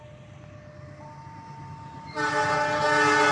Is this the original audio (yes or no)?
yes